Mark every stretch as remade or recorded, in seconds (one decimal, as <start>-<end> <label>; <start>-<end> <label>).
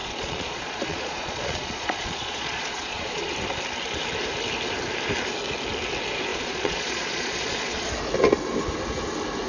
0.0-3.3 remade; 3.3-6.3 recorded; 6.3-7.9 remade; 7.9-9.5 recorded